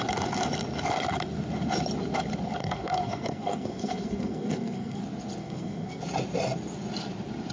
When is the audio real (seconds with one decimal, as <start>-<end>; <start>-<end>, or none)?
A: 0.0-2.6; 5.0-5.4; 6.0-7.5